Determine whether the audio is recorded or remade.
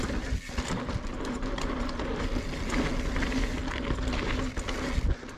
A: recorded